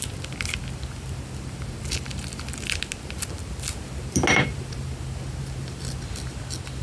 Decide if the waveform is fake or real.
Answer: real